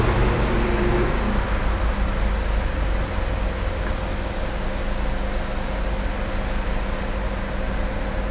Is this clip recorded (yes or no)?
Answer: yes